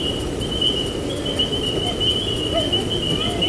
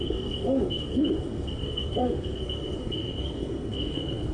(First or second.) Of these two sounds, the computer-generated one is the second